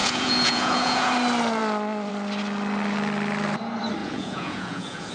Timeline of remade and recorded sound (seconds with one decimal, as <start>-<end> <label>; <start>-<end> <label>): 0.0-1.1 remade; 1.1-4.0 recorded; 4.0-5.1 remade